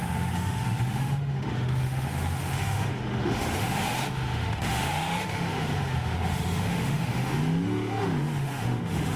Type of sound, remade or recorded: remade